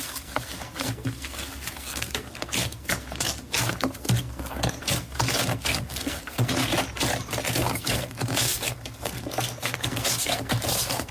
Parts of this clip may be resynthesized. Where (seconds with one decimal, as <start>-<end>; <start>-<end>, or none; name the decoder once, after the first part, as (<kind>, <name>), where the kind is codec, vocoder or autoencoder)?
0.0-6.7 (codec, SNAC); 7.5-11.1